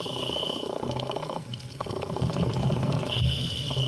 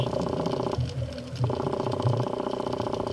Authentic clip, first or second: second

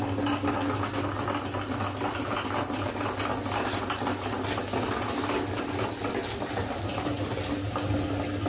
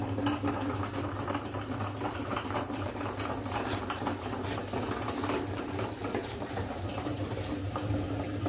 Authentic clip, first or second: first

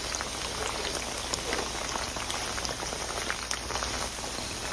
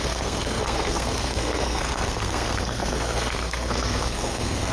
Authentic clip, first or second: first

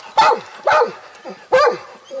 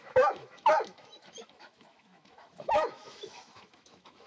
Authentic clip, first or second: first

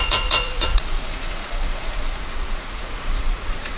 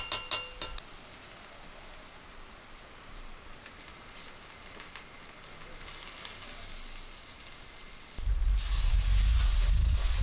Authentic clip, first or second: second